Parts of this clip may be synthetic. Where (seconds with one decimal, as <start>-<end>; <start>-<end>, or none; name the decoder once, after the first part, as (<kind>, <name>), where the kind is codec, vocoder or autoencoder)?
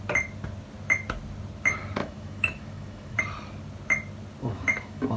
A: 2.0-3.2 (autoencoder, DAC-VAE); 4.4-5.2